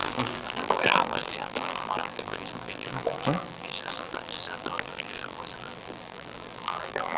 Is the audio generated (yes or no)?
yes